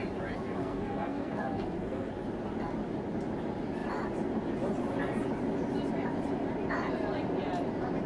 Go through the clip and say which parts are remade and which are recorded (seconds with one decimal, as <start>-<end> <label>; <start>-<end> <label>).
0.0-0.6 recorded; 0.6-2.1 remade; 2.1-8.1 recorded